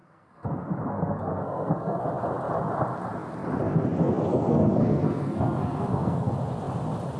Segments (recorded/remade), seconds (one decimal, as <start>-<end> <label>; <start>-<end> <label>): 0.0-2.0 remade; 2.0-4.3 recorded; 4.3-6.3 remade; 6.3-7.2 recorded